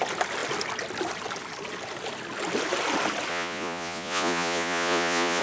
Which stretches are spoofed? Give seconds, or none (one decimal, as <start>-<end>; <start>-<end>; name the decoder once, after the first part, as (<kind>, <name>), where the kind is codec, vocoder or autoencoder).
3.3-5.4 (vocoder, Vocos)